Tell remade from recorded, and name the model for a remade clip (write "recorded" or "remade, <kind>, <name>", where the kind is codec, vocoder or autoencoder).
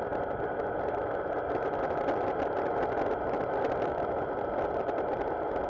recorded